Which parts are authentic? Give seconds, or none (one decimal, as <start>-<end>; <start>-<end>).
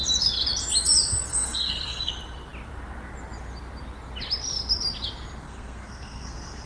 0.0-1.3; 2.1-5.4